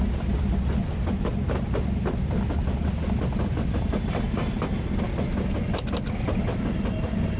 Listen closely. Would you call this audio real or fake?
real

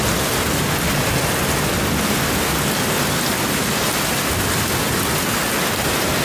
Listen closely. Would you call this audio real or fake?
real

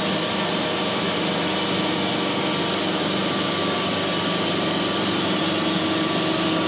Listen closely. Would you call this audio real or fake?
real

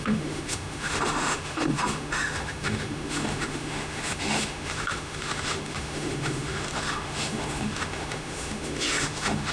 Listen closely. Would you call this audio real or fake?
fake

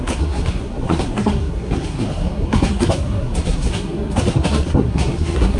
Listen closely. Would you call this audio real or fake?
fake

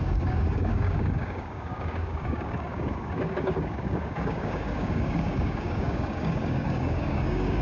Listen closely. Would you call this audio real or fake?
fake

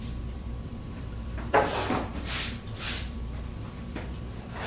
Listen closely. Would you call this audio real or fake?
fake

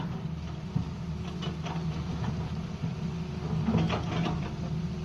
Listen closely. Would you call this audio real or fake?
real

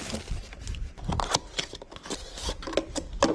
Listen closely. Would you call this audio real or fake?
real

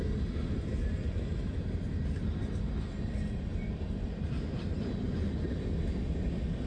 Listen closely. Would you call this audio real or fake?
real